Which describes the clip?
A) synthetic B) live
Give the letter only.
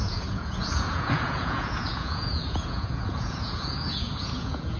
A